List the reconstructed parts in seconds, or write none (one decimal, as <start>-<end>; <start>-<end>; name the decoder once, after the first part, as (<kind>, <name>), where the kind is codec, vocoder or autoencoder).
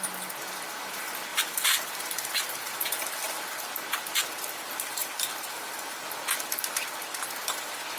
1.3-3.7 (vocoder, BigVGAN v2); 5.0-6.1